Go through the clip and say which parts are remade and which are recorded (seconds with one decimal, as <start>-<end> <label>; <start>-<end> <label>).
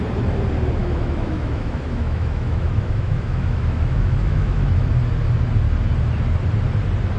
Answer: 0.0-0.8 recorded; 0.8-4.9 remade; 4.9-7.2 recorded